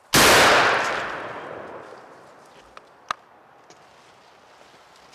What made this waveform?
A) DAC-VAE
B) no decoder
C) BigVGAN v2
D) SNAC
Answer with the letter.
B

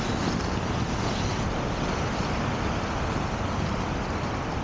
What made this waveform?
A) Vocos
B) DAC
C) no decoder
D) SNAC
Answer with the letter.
C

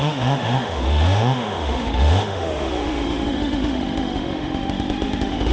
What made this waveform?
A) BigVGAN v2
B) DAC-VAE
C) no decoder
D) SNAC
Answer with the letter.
B